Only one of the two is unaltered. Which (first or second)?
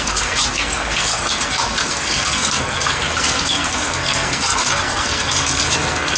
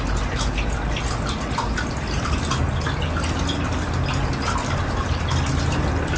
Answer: second